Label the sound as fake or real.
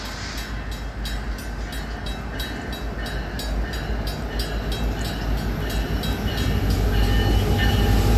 real